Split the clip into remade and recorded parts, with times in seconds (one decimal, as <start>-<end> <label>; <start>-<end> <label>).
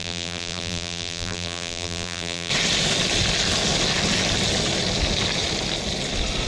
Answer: 0.0-2.5 remade; 2.5-6.5 recorded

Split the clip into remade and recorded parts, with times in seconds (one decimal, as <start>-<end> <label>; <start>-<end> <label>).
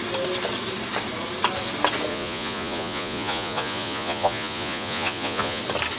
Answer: 0.0-2.1 recorded; 2.1-5.6 remade; 5.6-6.0 recorded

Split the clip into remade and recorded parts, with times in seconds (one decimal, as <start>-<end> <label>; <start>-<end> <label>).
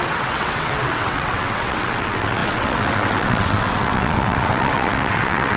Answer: 0.0-5.6 remade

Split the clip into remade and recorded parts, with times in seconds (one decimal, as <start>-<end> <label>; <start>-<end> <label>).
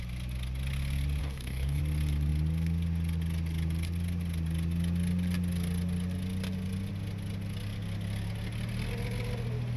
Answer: 0.0-1.2 recorded; 1.2-1.8 remade; 1.8-9.8 recorded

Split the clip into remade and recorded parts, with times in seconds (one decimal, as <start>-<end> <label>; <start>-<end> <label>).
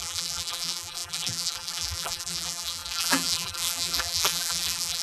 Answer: 0.0-5.0 remade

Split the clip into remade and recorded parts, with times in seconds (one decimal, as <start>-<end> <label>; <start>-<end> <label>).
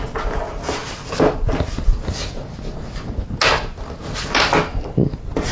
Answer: 0.0-5.5 recorded